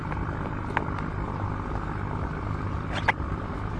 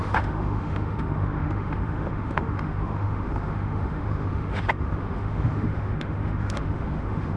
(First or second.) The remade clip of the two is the second